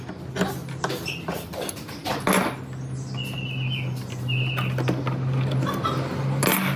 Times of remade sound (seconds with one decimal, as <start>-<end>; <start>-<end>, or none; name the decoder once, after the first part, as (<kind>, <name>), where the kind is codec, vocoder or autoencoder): none